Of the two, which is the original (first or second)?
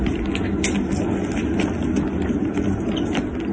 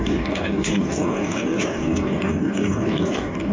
first